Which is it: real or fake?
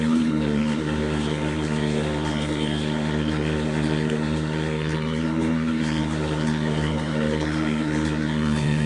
fake